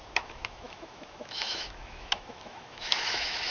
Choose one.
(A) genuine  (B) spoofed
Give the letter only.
B